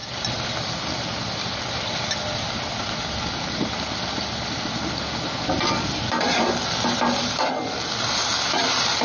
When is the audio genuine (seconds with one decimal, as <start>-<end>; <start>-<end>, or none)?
0.0-9.0